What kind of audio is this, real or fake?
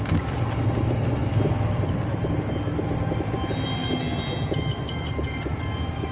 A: real